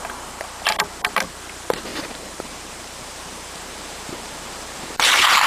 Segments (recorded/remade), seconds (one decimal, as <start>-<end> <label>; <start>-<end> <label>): 0.0-1.9 recorded; 1.9-5.5 remade